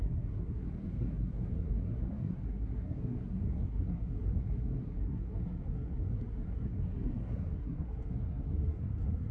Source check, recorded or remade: remade